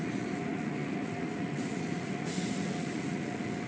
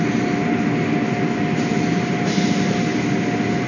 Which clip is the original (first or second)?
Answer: second